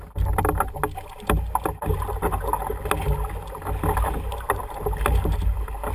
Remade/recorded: recorded